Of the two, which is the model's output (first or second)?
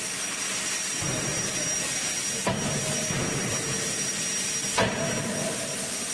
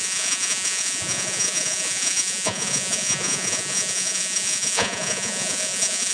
second